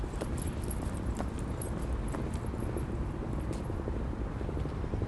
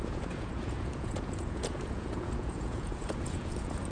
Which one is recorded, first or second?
first